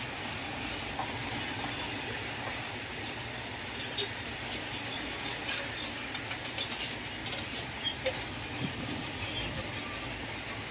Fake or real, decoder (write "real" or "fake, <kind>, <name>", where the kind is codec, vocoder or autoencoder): real